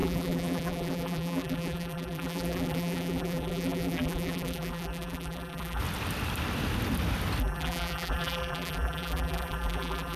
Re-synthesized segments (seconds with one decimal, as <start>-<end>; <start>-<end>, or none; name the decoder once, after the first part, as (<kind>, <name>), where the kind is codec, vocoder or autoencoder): 0.0-5.8 (vocoder, BigVGAN v2); 7.4-10.2